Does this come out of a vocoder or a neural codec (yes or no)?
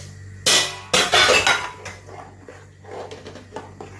no